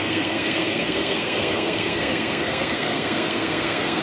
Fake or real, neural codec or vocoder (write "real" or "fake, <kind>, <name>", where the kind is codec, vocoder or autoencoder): fake, codec, SNAC